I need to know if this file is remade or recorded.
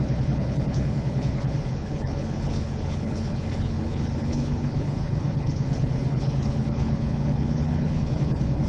remade